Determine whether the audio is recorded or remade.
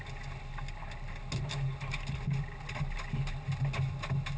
recorded